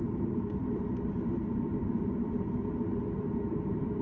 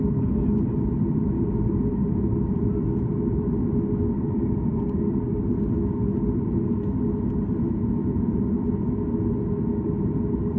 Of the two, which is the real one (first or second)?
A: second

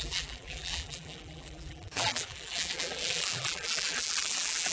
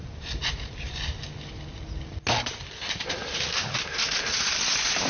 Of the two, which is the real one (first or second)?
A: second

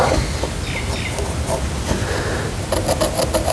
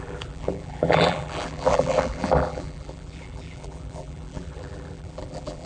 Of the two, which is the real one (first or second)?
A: first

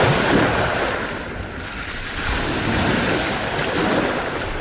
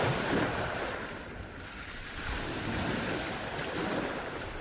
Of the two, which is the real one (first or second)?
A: first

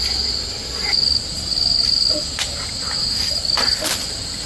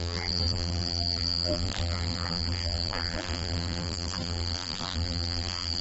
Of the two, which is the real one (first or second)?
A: first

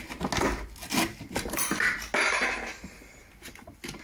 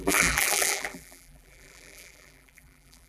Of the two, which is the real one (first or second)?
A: first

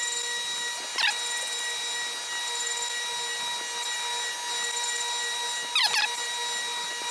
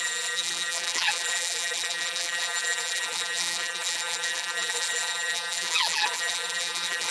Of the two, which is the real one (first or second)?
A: first